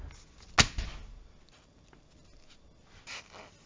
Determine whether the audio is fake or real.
real